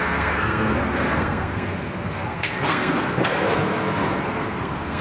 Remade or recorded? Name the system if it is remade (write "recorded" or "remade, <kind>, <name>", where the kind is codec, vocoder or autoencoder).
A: remade, codec, SNAC